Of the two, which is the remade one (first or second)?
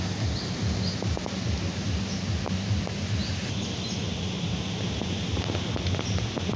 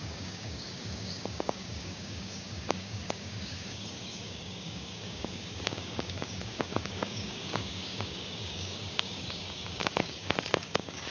second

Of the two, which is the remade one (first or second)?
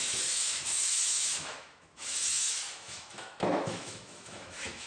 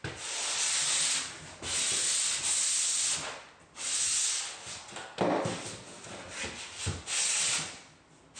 first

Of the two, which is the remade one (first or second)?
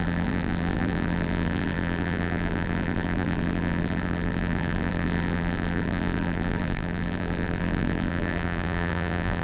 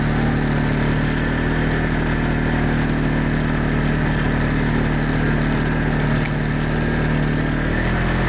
first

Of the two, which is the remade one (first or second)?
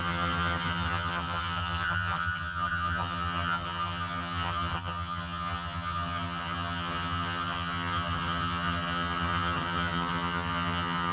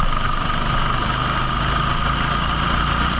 first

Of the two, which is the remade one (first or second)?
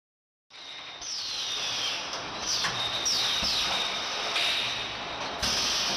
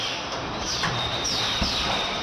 second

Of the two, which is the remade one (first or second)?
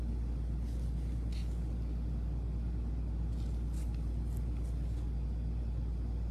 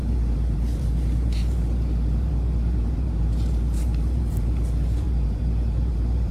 second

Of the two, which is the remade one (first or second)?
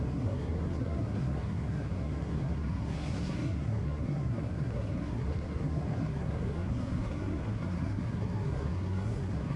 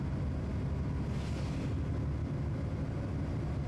first